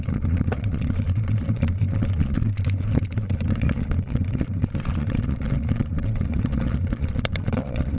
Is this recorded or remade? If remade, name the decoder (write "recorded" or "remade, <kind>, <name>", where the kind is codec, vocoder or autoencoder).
remade, vocoder, Vocos